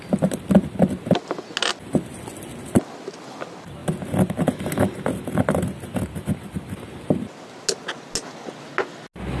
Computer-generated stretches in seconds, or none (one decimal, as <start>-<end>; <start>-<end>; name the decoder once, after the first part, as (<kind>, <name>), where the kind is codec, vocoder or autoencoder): none